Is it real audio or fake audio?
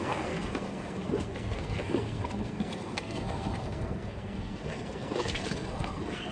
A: fake